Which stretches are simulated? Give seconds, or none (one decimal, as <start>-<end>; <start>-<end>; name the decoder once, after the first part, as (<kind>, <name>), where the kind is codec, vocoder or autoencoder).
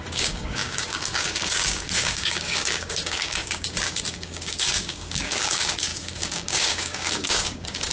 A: 0.0-7.9 (codec, DAC)